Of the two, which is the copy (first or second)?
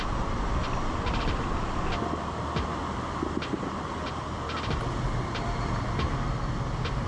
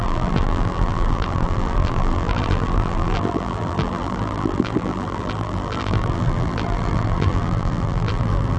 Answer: second